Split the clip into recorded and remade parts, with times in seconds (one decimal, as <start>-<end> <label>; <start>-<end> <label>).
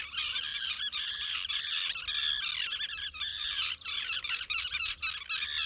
0.0-0.5 recorded; 0.5-1.6 remade; 1.6-3.3 recorded; 3.3-4.9 remade; 4.9-5.7 recorded